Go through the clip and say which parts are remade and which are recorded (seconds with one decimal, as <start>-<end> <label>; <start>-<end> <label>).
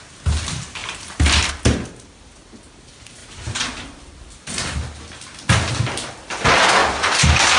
0.0-0.8 recorded; 0.8-1.5 remade; 1.5-6.8 recorded; 6.8-7.6 remade